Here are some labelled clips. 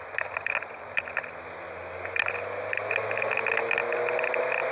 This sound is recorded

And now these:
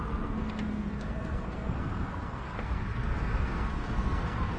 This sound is remade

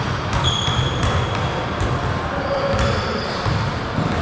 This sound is recorded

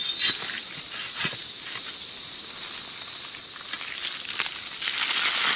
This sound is recorded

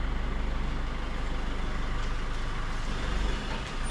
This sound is recorded